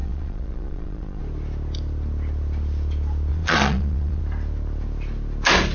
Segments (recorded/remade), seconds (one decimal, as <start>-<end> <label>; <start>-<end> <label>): 0.0-1.2 remade; 1.2-3.3 recorded; 3.3-4.2 remade; 4.2-5.7 recorded

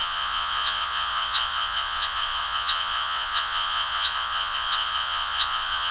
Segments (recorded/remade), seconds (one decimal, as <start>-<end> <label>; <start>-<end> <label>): 0.0-5.9 remade

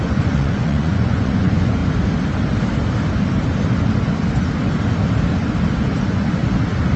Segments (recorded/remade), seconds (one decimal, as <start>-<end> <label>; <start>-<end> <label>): 0.0-1.8 remade; 1.8-6.0 recorded; 6.0-6.4 remade; 6.4-7.0 recorded

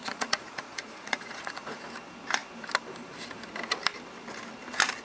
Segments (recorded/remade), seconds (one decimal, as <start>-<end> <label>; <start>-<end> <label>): 0.0-1.8 remade; 1.8-5.0 recorded

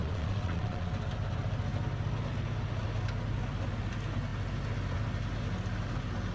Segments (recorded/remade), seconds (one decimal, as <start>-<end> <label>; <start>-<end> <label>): 0.0-0.9 remade; 0.9-6.3 recorded

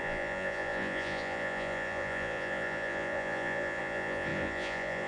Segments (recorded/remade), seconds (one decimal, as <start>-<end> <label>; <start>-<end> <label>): 0.0-5.1 remade

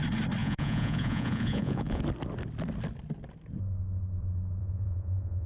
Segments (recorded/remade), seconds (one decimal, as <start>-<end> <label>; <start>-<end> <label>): 0.0-0.4 recorded; 0.4-2.0 remade; 2.0-4.6 recorded; 4.6-5.5 remade

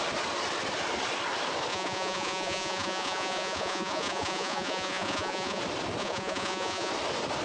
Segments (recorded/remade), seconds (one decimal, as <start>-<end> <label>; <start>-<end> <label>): 0.0-1.7 recorded; 1.7-5.6 remade; 5.6-6.0 recorded; 6.0-6.9 remade; 6.9-7.4 recorded